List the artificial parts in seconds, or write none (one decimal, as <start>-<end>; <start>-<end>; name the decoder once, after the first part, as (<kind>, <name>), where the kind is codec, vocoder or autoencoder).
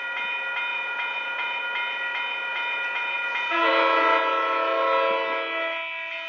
0.7-1.6 (vocoder, Vocos); 2.5-3.7